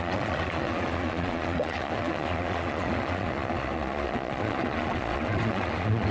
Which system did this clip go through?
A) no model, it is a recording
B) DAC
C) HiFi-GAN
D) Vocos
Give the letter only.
D